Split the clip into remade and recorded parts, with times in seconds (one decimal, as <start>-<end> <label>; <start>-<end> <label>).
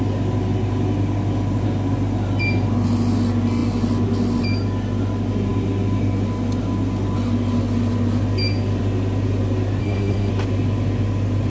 0.0-9.8 recorded; 9.8-10.3 remade; 10.3-11.5 recorded